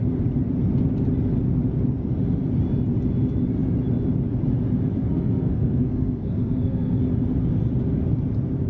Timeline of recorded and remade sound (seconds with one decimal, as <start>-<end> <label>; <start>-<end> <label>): 0.0-5.0 recorded; 5.0-7.0 remade; 7.0-8.7 recorded

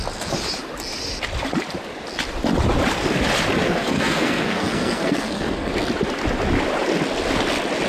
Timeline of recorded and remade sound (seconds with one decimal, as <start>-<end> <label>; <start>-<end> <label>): 0.0-3.6 recorded; 3.6-5.7 remade; 5.7-7.9 recorded